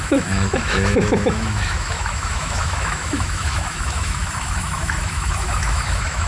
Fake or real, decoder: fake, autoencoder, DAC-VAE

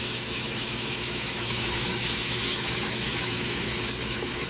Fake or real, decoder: fake, autoencoder, DAC-VAE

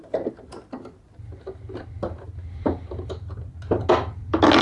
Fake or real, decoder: real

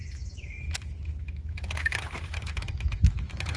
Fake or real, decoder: fake, autoencoder, DAC-VAE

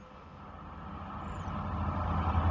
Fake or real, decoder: real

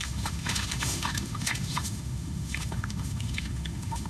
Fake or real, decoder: fake, autoencoder, DAC-VAE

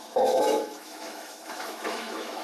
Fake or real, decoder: fake, autoencoder, DAC-VAE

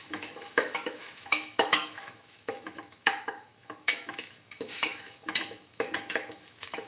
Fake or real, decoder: fake, autoencoder, DAC-VAE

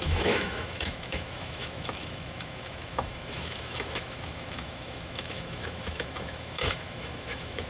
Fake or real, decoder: fake, autoencoder, DAC-VAE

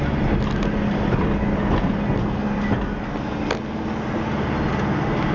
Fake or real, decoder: real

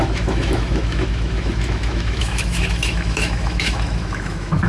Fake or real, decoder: fake, autoencoder, DAC-VAE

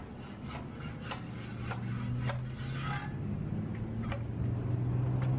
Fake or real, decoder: real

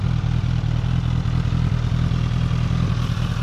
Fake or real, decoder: real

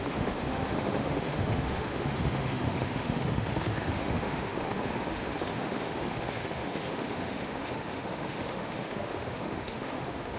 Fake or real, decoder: fake, autoencoder, DAC-VAE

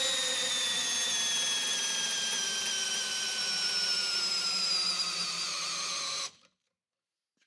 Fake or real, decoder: real